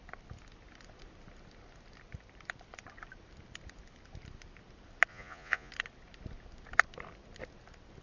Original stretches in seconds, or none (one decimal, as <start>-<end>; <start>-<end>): 0.0-5.1; 5.7-8.0